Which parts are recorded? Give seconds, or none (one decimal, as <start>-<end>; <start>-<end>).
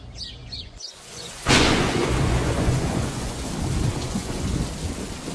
0.0-0.4; 3.5-4.0; 4.6-5.3